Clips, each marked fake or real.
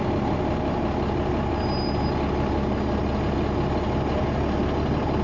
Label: real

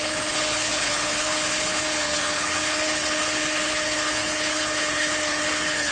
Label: fake